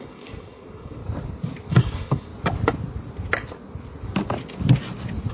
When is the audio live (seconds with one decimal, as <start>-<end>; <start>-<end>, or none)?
1.0-1.7; 2.3-5.3